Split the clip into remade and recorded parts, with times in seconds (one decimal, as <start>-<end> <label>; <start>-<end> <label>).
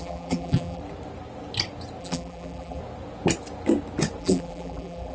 0.0-0.8 remade; 0.8-2.0 recorded; 2.0-2.8 remade; 2.8-4.2 recorded; 4.2-5.1 remade